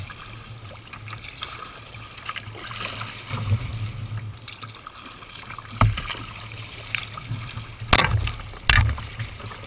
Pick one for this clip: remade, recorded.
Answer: recorded